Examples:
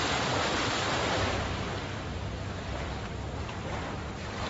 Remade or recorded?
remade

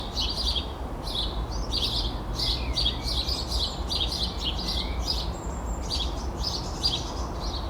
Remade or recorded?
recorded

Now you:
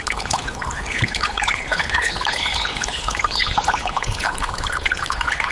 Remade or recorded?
remade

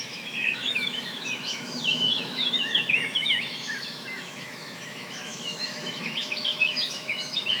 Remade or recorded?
remade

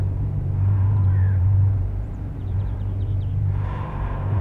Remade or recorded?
remade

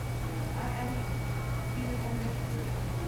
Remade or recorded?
recorded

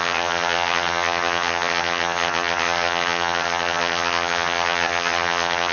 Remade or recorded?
remade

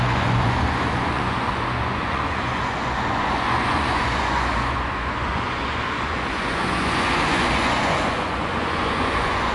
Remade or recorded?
remade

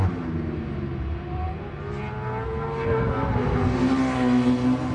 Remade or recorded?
recorded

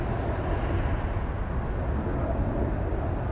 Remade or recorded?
recorded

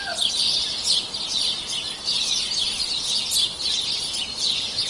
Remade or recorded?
recorded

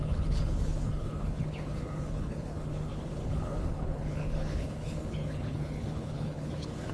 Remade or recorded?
remade